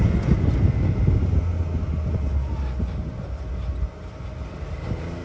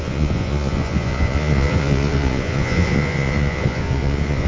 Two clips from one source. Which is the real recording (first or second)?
first